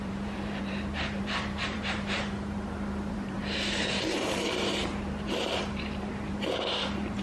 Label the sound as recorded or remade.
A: remade